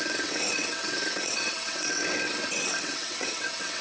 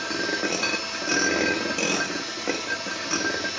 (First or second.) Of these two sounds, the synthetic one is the first